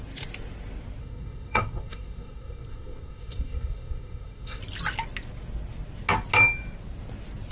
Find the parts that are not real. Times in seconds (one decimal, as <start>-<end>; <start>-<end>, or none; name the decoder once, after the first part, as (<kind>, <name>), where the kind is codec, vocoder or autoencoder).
1.0-4.6 (codec, SNAC)

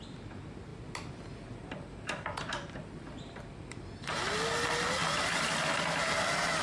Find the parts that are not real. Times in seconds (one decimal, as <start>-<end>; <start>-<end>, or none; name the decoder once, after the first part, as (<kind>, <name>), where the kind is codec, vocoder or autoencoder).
none

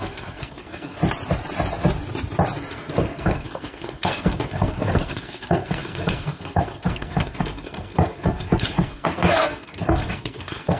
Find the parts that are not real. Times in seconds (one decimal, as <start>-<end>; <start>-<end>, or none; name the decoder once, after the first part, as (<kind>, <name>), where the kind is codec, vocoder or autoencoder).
0.0-1.0 (codec, SNAC); 2.7-10.8

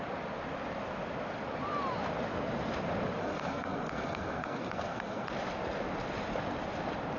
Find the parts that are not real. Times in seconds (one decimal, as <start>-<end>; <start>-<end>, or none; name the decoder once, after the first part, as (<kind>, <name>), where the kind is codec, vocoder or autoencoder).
3.2-5.3 (codec, SNAC)

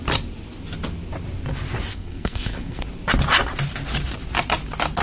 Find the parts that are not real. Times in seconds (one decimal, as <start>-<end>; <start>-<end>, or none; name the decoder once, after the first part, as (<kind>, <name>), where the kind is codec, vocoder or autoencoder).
1.9-2.8 (codec, SNAC)

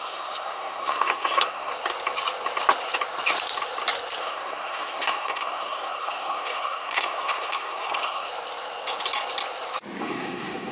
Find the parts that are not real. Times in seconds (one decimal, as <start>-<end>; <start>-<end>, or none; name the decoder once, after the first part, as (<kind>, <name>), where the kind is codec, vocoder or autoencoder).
0.0-1.7 (codec, SNAC); 4.2-8.3; 10.0-10.7